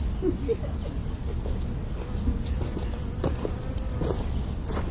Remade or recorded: recorded